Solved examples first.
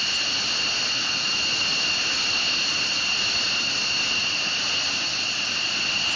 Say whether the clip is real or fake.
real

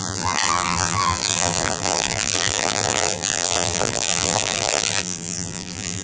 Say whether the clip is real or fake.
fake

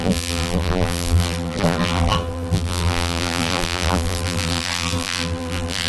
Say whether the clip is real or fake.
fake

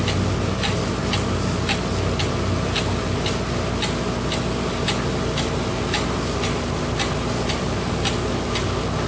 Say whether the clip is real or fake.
real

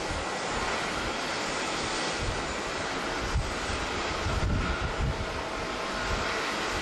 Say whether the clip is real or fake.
real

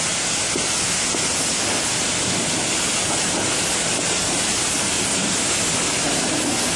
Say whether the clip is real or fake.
real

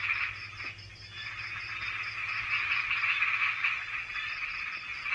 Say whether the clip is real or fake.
real